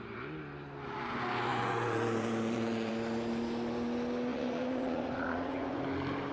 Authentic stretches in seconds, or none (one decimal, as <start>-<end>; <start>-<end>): 0.0-1.5; 2.9-4.3; 5.8-6.3